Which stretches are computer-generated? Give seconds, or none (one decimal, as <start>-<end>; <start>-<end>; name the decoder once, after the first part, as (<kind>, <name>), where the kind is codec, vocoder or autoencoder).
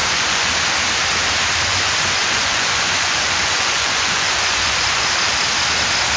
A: 0.0-0.5 (vocoder, Vocos); 1.7-5.1